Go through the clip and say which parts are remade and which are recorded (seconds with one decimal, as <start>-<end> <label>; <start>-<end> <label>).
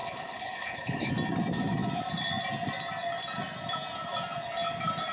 0.0-1.1 remade; 1.1-5.1 recorded